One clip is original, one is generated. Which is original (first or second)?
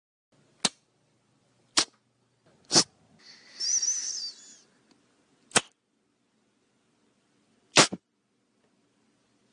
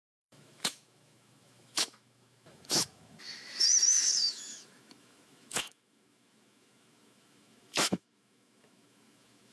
first